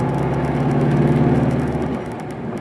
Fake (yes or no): no